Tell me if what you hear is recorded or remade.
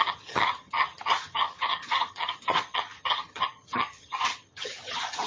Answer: remade